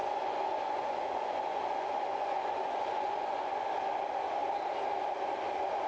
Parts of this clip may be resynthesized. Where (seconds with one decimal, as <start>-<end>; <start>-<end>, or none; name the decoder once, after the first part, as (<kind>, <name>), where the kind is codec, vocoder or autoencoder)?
0.0-3.5 (vocoder, Vocos)